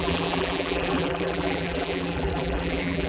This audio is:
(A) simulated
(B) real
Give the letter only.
A